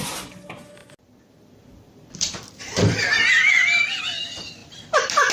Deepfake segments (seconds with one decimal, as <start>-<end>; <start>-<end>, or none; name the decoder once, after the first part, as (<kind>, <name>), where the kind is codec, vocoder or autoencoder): 0.8-4.0 (vocoder, BigVGAN v2); 4.6-5.3